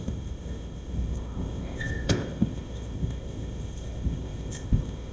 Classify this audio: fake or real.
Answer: fake